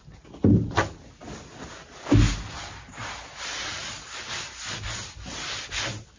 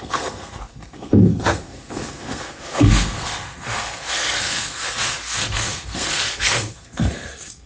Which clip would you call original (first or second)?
first